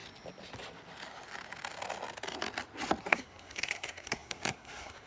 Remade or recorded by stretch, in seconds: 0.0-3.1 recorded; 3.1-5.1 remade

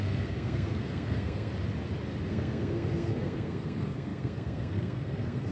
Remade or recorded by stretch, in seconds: 0.0-1.5 remade; 1.5-2.3 recorded; 2.3-5.5 remade